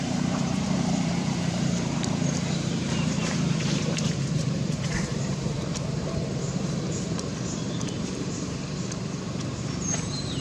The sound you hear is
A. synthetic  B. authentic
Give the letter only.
A